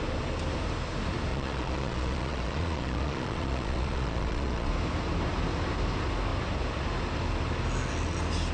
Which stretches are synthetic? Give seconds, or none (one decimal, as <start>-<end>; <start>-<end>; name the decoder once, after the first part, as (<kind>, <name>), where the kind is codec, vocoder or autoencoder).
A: 1.3-4.7 (vocoder, Vocos)